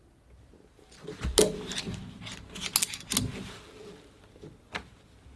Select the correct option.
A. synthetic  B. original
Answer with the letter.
B